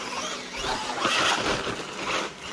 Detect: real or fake real